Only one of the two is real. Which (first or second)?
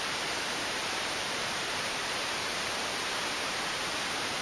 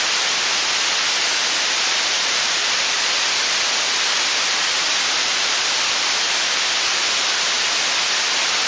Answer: second